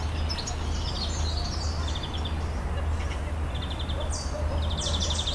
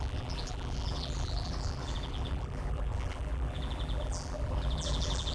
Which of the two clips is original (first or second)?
first